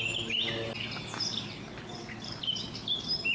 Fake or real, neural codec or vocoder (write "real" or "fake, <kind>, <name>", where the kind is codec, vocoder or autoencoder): real